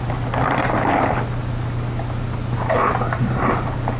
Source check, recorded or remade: recorded